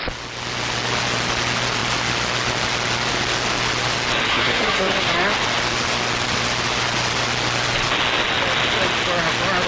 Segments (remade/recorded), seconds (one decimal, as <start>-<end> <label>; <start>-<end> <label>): 0.0-4.3 recorded; 4.3-4.9 remade; 4.9-9.7 recorded